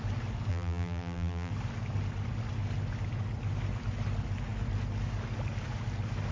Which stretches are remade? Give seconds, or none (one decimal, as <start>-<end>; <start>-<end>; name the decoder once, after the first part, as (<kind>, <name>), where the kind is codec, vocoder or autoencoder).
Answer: 0.5-1.5 (vocoder, BigVGAN v2)